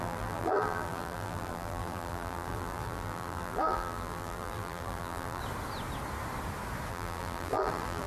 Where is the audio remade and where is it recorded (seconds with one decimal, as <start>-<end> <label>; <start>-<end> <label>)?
0.0-5.4 remade; 5.4-6.9 recorded; 6.9-8.1 remade